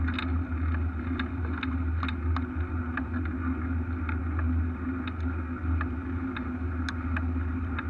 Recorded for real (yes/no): yes